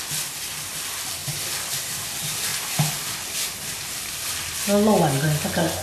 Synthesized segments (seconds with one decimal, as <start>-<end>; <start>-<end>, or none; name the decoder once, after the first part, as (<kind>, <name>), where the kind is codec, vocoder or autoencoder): 1.2-2.0 (vocoder, BigVGAN v2); 2.5-4.1